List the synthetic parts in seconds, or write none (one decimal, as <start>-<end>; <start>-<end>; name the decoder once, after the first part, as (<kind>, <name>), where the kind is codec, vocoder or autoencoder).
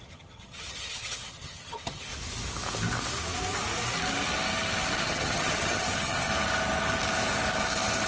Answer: 0.0-2.1 (vocoder, HiFi-GAN); 5.0-6.3